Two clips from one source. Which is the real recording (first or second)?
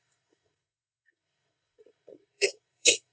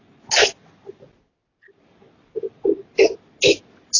second